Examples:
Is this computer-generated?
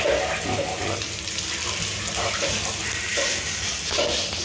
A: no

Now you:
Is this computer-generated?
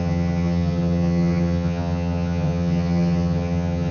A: yes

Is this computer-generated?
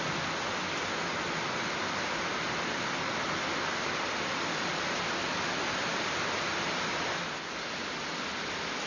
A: no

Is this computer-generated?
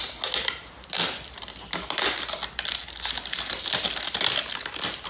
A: no